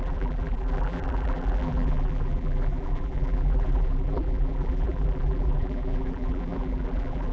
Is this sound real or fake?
fake